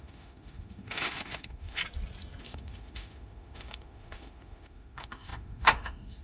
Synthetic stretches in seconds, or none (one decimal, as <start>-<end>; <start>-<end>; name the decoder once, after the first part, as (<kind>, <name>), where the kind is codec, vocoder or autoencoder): 0.0-1.8 (autoencoder, DAC-VAE); 2.4-6.2